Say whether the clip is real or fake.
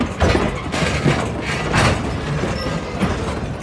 real